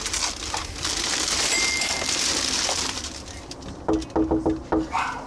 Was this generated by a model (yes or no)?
no